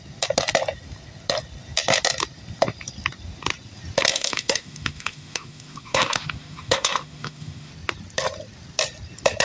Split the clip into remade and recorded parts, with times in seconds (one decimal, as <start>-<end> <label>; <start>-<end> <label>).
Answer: 0.0-4.1 recorded; 4.1-7.7 remade; 7.7-9.4 recorded